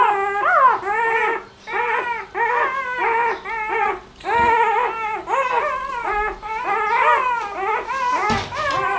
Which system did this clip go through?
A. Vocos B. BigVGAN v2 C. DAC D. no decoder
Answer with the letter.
D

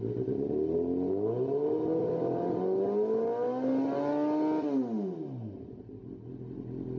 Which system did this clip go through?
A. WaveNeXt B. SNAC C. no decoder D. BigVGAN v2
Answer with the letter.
C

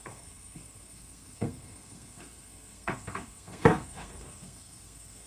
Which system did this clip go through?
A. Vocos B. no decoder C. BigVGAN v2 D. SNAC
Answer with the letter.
D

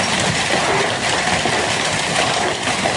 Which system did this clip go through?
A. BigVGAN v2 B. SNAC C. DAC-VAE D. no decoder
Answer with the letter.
D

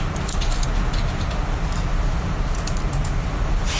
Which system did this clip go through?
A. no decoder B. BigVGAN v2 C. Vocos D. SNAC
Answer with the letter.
A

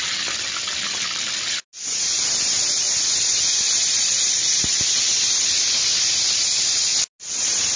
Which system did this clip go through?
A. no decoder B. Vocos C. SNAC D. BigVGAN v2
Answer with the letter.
A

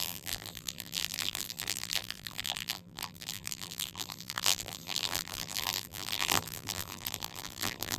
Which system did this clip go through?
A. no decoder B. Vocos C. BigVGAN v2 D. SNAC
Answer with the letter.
C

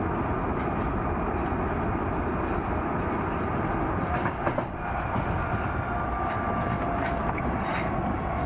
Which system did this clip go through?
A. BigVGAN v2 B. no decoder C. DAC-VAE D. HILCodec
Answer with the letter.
B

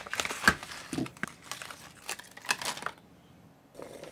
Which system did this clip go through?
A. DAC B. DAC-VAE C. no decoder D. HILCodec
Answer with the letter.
C